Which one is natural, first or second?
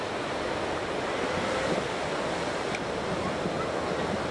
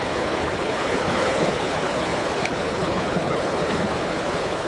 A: first